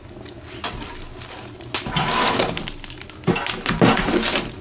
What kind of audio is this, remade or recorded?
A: recorded